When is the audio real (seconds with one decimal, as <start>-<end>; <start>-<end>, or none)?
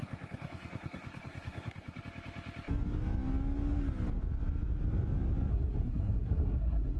2.0-5.5